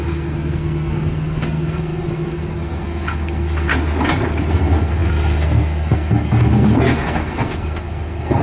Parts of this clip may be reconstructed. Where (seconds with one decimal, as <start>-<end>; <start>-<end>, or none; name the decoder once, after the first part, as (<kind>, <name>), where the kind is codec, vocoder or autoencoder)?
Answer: 0.0-3.7 (codec, SNAC); 4.5-8.4